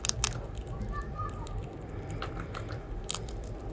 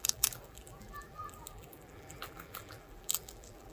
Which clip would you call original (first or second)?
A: first